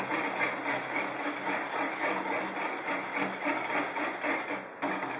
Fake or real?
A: real